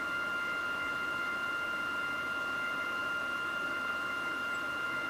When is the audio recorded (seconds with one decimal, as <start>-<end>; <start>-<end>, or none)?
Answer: 0.0-5.1